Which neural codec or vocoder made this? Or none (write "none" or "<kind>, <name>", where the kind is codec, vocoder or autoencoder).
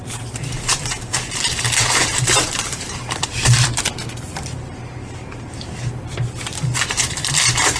vocoder, BigVGAN v2